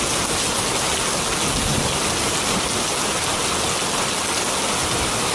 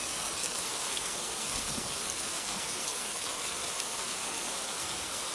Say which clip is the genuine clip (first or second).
first